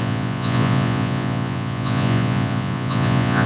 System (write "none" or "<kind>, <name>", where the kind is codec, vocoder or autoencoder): vocoder, Vocos